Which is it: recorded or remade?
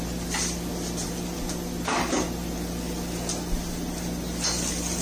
recorded